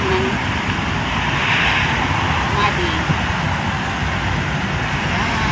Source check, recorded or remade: recorded